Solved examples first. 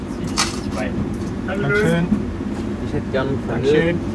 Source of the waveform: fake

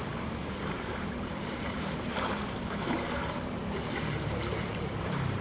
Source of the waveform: fake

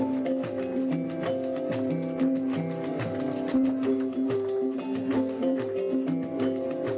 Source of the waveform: real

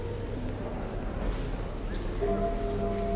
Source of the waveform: real